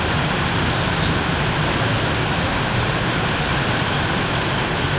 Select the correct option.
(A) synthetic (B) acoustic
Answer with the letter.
B